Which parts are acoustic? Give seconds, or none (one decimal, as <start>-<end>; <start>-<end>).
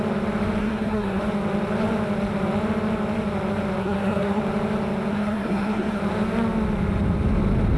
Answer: 0.0-0.6; 1.2-3.8; 4.4-5.1; 6.0-7.8